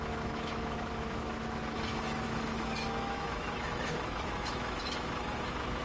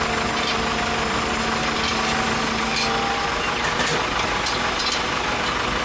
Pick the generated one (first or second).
first